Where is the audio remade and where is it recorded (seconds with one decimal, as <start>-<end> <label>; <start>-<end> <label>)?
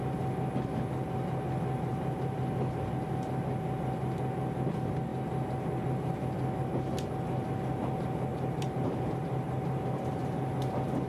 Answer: 0.0-1.9 recorded; 1.9-2.4 remade; 2.4-8.3 recorded; 8.3-10.2 remade; 10.2-11.1 recorded